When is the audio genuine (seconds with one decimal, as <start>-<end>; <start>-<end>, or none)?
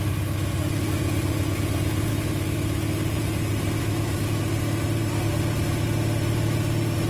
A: 0.0-2.1; 2.8-3.8; 4.4-7.1